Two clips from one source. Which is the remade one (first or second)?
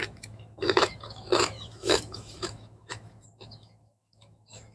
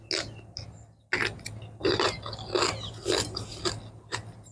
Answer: first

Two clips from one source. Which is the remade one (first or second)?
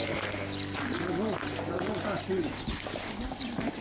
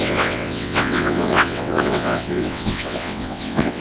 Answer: second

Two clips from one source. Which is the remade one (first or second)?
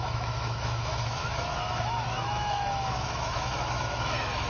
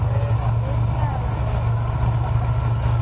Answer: first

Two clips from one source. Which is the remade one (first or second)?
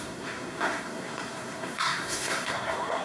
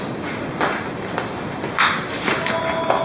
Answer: first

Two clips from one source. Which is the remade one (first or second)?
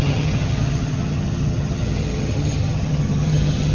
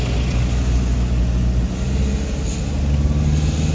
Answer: first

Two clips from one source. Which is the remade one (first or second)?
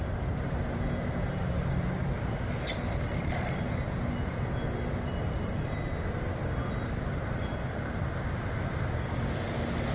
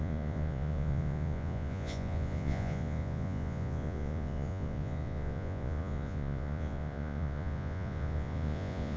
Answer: second